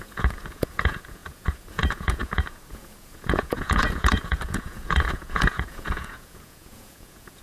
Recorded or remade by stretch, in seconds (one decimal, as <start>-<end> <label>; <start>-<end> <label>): 0.0-7.4 remade